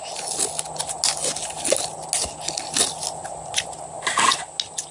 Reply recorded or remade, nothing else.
recorded